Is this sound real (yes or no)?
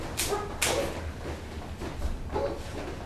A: yes